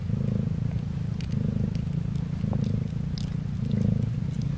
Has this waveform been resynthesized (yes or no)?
no